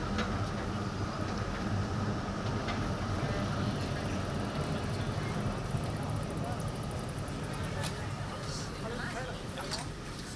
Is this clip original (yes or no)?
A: yes